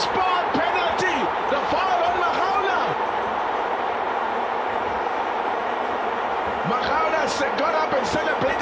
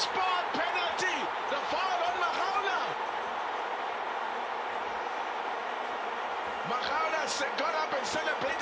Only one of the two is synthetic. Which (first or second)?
first